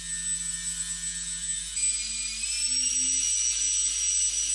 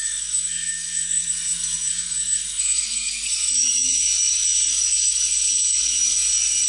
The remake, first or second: second